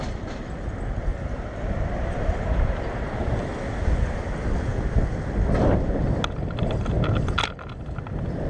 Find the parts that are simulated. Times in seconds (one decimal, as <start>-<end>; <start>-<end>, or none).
1.1-2.9